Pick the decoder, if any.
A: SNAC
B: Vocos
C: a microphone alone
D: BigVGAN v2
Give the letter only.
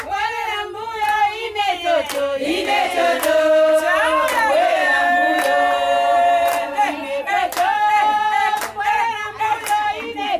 C